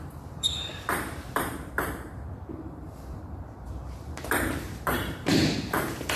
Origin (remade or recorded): remade